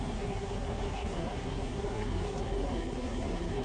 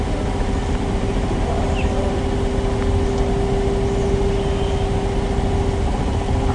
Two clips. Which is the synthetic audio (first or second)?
first